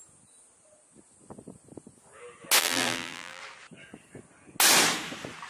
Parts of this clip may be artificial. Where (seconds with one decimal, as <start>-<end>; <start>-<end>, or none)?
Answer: 2.6-3.4